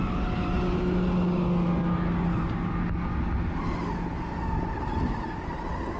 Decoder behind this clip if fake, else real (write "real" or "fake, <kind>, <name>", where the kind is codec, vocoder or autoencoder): real